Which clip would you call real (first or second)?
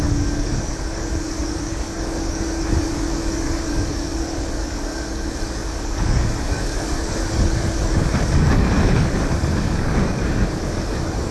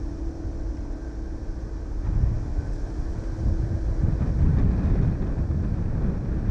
second